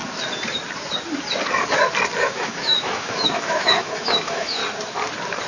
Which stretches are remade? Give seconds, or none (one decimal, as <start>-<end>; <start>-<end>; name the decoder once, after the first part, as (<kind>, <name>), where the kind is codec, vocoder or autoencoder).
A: 2.2-4.6 (autoencoder, DAC-VAE)